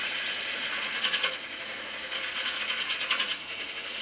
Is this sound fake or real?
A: fake